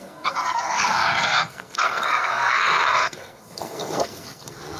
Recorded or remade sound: remade